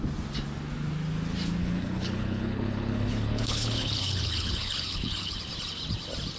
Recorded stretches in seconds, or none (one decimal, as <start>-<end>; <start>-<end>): 0.0-1.6; 5.4-6.4